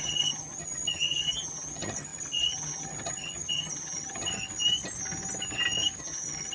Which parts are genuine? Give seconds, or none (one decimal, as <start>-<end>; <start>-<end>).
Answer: 4.3-6.0